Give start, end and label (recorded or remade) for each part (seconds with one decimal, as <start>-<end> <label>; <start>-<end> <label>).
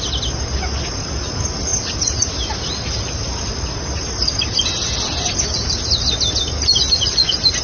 0.0-7.6 recorded